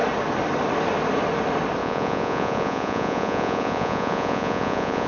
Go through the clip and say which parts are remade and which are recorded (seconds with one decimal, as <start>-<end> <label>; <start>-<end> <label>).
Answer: 0.0-1.8 recorded; 1.8-5.1 remade